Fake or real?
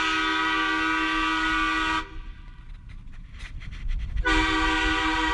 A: real